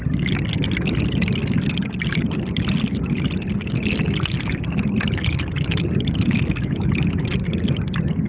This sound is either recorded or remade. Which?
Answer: recorded